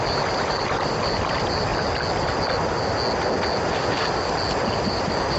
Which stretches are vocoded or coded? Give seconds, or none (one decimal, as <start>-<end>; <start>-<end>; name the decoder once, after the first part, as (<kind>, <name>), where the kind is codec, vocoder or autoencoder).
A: 0.0-1.7 (vocoder, BigVGAN v2); 4.8-5.4